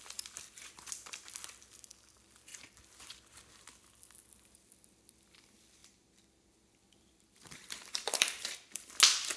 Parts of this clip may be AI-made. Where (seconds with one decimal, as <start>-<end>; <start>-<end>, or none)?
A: 5.8-8.9